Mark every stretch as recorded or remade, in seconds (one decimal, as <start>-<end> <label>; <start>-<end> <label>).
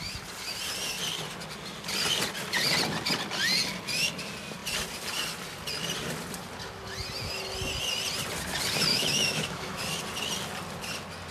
0.0-8.9 recorded; 8.9-9.8 remade; 9.8-11.3 recorded